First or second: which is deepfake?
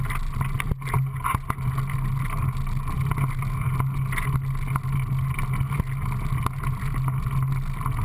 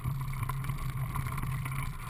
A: second